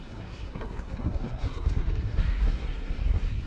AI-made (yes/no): yes